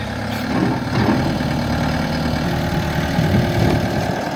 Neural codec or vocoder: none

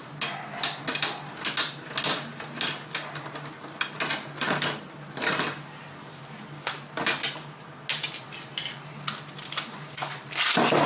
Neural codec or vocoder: none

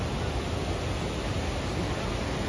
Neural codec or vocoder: none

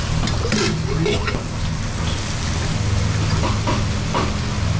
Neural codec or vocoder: none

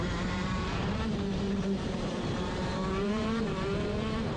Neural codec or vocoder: vocoder, BigVGAN v2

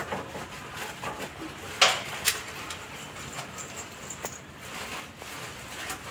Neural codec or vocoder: none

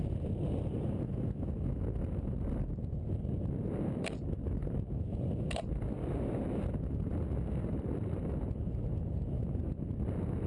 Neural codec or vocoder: none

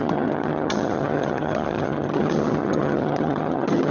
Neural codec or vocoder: vocoder, HiFi-GAN